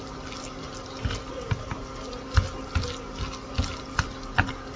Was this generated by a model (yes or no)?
no